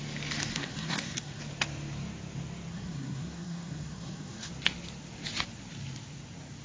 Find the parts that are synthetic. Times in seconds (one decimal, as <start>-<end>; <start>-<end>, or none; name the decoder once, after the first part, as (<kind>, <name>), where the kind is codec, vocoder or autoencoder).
0.5-1.4 (codec, SNAC); 2.7-4.5